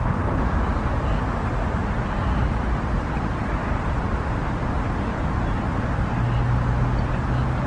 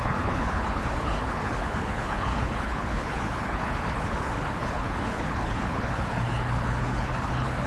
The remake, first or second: second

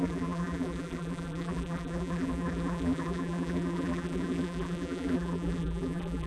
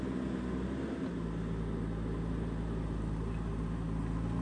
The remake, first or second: first